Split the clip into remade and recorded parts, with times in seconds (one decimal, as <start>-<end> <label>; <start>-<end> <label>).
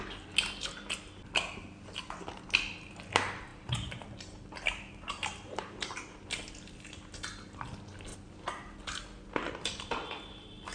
0.0-3.5 recorded; 3.5-6.3 remade; 6.3-8.1 recorded; 8.1-8.8 remade; 8.8-10.7 recorded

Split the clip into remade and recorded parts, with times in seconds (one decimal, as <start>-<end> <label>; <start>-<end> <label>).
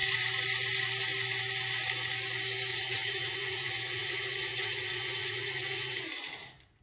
0.0-2.7 recorded; 2.7-6.0 remade; 6.0-6.8 recorded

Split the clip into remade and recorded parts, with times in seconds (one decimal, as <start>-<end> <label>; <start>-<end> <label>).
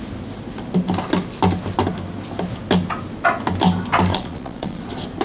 0.0-4.1 recorded; 4.1-4.8 remade; 4.8-5.2 recorded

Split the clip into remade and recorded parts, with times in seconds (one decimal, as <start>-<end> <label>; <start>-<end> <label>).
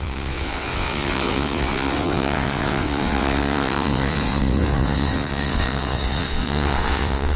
0.0-7.4 remade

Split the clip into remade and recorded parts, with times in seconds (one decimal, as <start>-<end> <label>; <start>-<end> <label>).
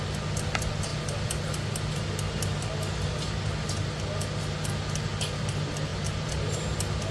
0.0-7.1 recorded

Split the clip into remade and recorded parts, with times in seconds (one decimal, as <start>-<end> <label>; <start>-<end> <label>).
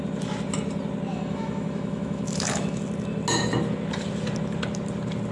0.0-1.1 recorded; 1.1-2.8 remade; 2.8-5.3 recorded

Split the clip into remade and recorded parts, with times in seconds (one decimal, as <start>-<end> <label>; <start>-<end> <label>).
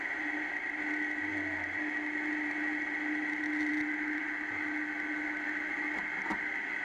0.0-6.8 recorded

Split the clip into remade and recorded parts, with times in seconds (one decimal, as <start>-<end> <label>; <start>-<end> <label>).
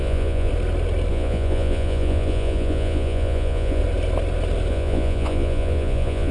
0.0-0.5 remade; 0.5-1.1 recorded; 1.1-3.8 remade; 3.8-4.7 recorded; 4.7-6.3 remade